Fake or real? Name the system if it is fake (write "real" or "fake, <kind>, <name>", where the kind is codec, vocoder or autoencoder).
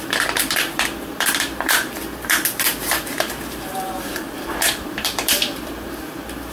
fake, vocoder, BigVGAN v2